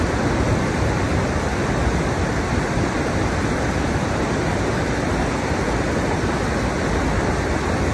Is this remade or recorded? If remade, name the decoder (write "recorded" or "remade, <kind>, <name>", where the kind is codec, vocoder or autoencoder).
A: recorded